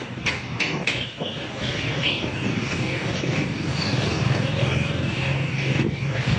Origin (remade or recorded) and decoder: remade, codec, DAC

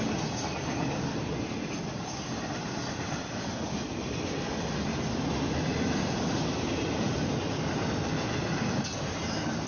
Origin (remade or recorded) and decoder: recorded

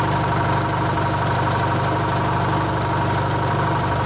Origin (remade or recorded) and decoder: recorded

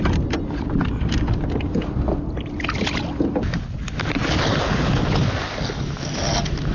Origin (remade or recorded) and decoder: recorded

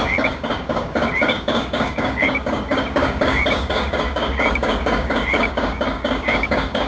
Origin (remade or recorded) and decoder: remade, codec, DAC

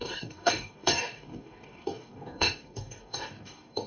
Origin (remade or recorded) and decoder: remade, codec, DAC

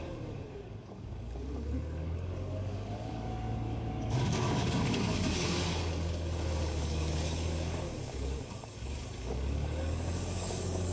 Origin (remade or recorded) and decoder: remade, codec, DAC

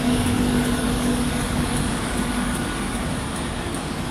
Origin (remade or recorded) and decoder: remade, codec, DAC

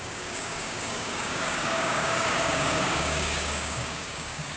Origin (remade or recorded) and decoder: remade, codec, DAC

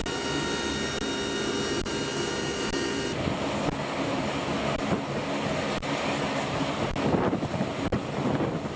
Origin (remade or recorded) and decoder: recorded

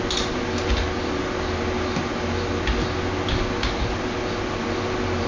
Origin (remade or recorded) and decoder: recorded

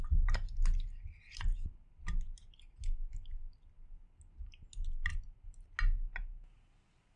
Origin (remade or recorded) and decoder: recorded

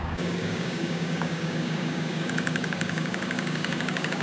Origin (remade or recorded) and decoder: remade, codec, DAC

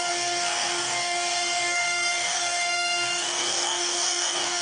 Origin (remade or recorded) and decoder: remade, codec, DAC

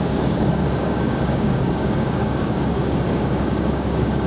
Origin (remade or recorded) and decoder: remade, codec, DAC